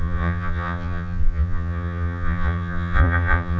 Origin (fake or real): fake